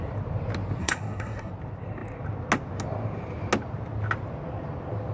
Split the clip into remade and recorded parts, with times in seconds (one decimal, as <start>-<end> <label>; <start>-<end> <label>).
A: 0.0-0.8 recorded; 0.8-1.5 remade; 1.5-5.1 recorded